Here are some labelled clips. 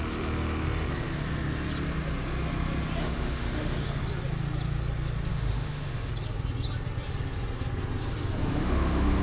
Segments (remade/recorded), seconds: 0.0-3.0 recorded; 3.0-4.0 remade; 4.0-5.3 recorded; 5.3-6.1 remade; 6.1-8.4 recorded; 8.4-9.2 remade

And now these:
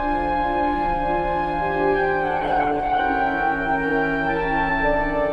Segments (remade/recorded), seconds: 0.0-2.4 recorded; 2.4-3.0 remade; 3.0-5.3 recorded

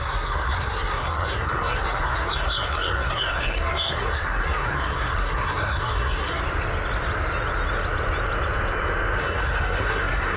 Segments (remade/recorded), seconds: 0.0-6.4 remade; 6.4-9.2 recorded; 9.2-10.4 remade

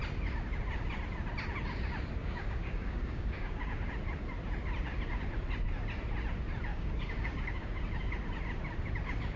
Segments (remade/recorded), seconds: 0.0-2.2 recorded; 2.2-3.9 remade; 3.9-6.7 recorded; 6.7-7.8 remade; 7.8-9.4 recorded

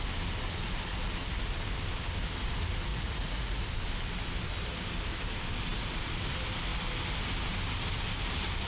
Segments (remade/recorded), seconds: 0.0-2.9 recorded; 2.9-3.6 remade; 3.6-8.7 recorded

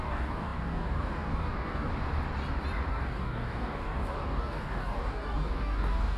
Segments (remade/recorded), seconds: 0.0-1.9 remade; 1.9-2.9 recorded; 2.9-6.2 remade

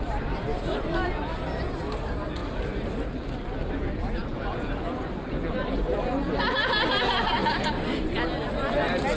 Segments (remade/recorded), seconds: 0.0-9.2 recorded